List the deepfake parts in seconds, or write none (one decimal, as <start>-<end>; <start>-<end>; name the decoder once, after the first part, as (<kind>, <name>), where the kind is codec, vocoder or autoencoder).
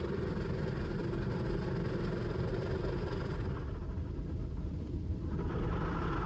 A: none